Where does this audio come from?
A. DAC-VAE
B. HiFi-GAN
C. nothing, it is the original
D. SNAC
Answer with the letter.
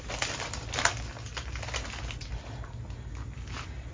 C